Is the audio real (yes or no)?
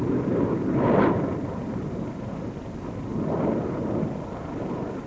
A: yes